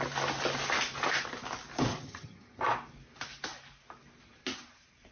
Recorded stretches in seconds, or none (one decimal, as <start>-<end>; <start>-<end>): 0.0-1.9; 2.6-5.1